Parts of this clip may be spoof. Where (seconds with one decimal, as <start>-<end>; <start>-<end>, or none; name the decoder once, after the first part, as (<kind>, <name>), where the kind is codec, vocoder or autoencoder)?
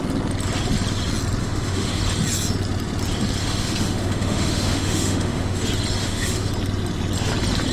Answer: 1.4-2.0 (autoencoder, DAC-VAE); 3.4-5.6; 6.0-6.5